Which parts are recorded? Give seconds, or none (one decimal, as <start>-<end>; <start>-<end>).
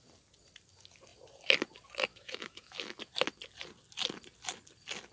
0.0-2.1; 3.0-5.1